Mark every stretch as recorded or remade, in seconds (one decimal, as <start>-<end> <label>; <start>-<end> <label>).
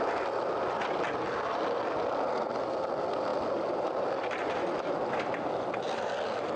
0.0-6.6 recorded